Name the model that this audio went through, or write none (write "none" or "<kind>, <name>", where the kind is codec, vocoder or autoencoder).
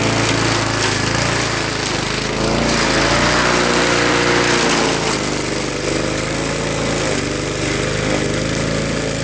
none